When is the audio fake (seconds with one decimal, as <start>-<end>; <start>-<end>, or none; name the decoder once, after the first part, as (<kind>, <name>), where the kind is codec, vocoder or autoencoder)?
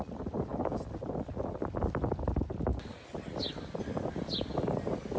none